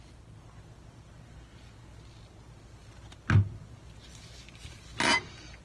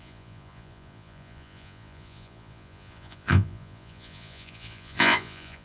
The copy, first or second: second